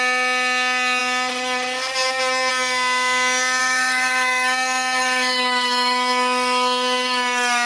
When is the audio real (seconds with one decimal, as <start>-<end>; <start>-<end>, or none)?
0.0-3.6